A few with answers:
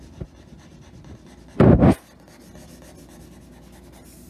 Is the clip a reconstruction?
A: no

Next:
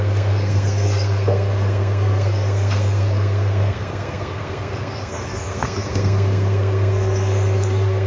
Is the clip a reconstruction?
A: yes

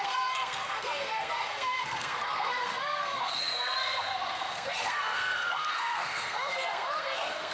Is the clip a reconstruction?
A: yes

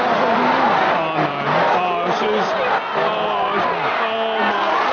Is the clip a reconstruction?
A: no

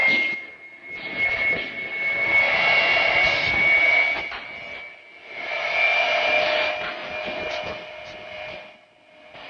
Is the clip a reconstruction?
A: no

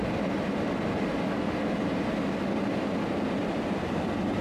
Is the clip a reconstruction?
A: no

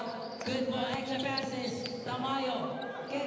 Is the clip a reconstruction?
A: no